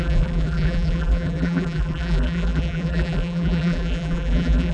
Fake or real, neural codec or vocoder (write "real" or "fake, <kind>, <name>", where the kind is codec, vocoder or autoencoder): fake, vocoder, BigVGAN v2